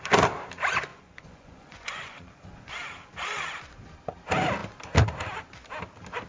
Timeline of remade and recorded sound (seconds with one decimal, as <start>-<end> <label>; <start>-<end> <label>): 0.0-0.9 recorded; 0.9-2.7 remade; 2.7-6.3 recorded